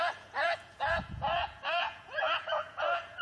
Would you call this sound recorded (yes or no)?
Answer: no